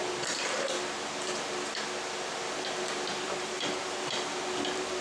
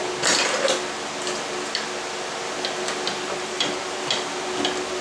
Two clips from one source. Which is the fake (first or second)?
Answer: first